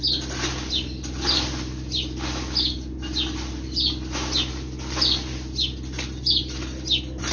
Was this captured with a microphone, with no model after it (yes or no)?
yes